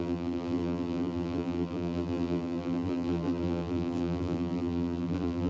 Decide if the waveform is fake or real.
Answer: fake